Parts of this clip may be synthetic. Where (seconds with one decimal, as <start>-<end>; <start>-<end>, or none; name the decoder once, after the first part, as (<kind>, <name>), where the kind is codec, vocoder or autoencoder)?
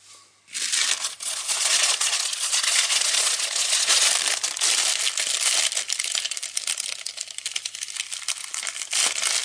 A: 1.0-4.1 (vocoder, Vocos)